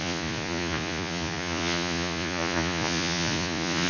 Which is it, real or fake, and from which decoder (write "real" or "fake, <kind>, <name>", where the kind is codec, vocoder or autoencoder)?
fake, vocoder, Vocos